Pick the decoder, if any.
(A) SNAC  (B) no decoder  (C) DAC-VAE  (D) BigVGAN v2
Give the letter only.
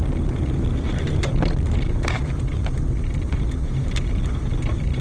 D